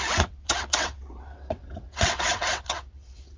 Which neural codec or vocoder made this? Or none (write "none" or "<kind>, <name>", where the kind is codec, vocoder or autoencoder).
vocoder, WaveNeXt